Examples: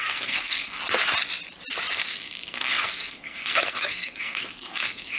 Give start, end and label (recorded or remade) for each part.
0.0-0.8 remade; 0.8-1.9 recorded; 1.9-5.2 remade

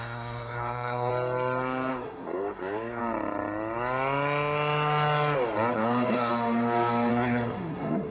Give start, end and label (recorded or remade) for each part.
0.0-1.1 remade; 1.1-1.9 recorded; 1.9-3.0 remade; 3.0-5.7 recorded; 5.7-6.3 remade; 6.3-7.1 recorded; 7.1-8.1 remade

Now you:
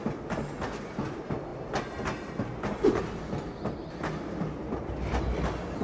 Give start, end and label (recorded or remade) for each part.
0.0-5.8 recorded

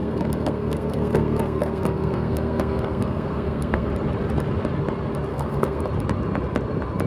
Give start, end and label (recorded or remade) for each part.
0.0-3.9 remade; 3.9-5.3 recorded; 5.3-5.8 remade; 5.8-7.1 recorded